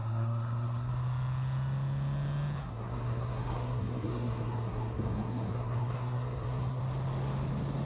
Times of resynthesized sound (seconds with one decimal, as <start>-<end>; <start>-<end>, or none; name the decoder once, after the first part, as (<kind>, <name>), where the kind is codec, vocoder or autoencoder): 0.0-0.9 (codec, SNAC); 2.6-6.8